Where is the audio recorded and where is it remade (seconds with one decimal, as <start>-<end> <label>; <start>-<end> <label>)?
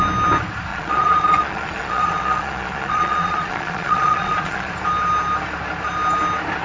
0.0-0.7 recorded; 0.7-4.7 remade; 4.7-6.6 recorded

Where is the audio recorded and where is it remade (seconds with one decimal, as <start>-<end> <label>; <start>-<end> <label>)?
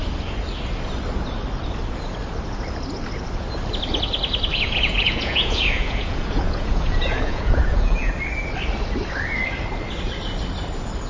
0.0-4.5 recorded; 4.5-8.1 remade; 8.1-11.1 recorded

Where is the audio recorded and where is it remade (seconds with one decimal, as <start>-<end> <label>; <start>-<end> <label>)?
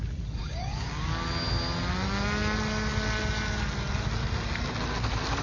0.0-0.4 recorded; 0.4-1.1 remade; 1.1-5.4 recorded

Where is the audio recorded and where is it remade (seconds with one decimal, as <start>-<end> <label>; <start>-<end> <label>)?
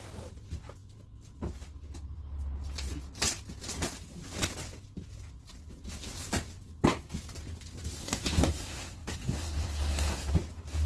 0.0-8.0 recorded; 8.0-10.3 remade; 10.3-10.9 recorded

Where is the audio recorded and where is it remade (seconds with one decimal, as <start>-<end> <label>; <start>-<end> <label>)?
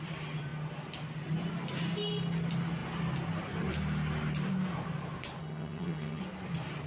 0.0-5.4 recorded; 5.4-6.2 remade; 6.2-6.9 recorded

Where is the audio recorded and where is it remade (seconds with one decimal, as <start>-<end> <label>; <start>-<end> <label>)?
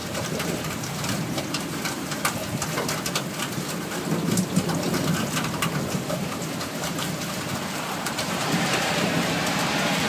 0.0-2.4 remade; 2.4-5.3 recorded; 5.3-10.1 remade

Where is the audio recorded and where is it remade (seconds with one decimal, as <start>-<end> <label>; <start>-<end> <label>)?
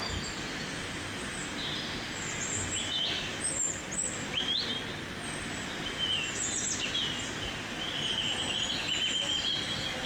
0.0-3.3 recorded; 3.3-3.9 remade; 3.9-10.1 recorded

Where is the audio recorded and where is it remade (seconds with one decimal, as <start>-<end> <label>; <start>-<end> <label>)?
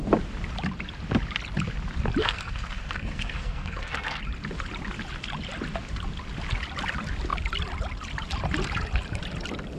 0.0-2.2 recorded; 2.2-4.2 remade; 4.2-9.8 recorded